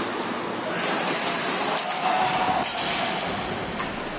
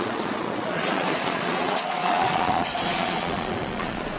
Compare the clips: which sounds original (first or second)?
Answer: first